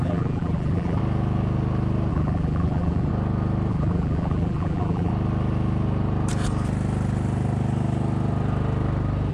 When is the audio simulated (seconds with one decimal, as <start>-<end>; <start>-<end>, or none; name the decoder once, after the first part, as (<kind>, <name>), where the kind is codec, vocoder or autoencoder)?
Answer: 0.0-1.0 (vocoder, BigVGAN v2); 2.1-3.1; 3.7-5.1